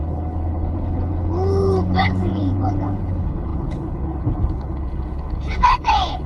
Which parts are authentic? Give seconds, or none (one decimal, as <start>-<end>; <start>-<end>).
none